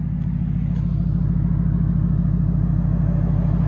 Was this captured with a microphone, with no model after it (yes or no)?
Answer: yes